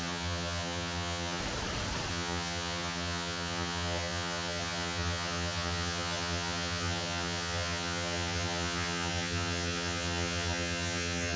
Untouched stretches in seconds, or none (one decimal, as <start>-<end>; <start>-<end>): 1.4-2.1